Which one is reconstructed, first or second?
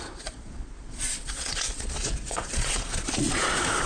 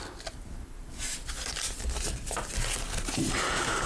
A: first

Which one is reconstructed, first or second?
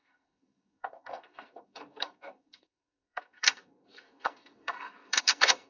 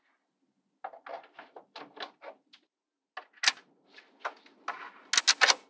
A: first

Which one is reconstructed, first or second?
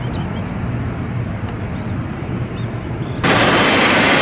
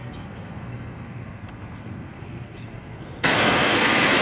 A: second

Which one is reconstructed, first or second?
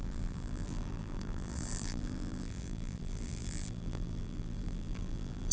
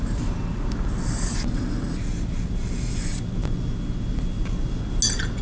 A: first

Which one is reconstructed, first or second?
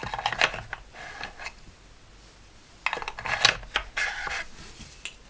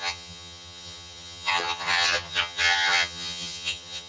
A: second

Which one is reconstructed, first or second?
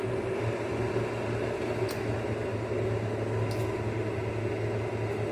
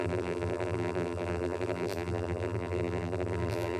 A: second